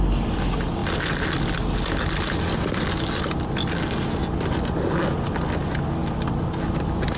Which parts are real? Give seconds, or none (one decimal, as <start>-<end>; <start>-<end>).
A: 0.0-7.2